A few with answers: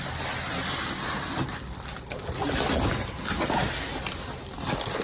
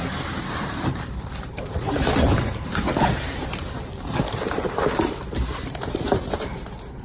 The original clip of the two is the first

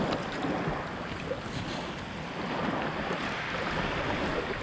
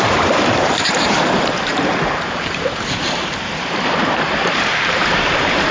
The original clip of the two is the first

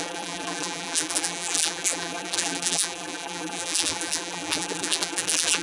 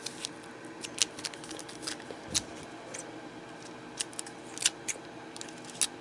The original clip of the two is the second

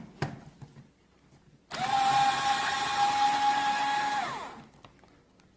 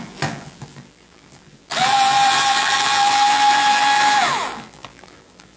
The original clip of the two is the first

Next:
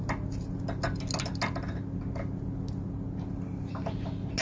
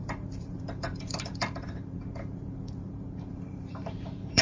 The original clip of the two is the first